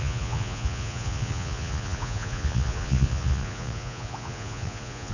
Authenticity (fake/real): fake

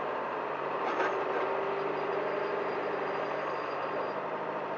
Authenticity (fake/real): fake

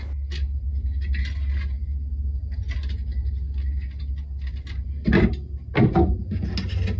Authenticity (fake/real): real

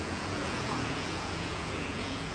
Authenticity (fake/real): fake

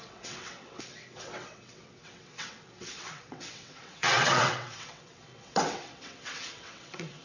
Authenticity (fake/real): fake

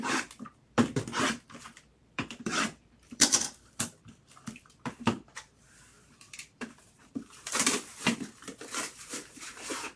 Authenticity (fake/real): fake